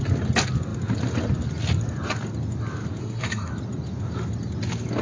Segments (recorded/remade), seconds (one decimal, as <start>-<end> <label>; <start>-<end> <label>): 0.0-3.0 recorded; 3.0-3.5 remade; 3.5-5.0 recorded